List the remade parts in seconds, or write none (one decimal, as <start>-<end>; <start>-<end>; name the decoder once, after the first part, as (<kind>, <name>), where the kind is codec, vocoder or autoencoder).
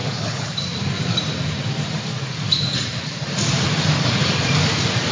0.0-0.6 (codec, HILCodec)